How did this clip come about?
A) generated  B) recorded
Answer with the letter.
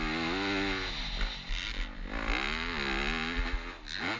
B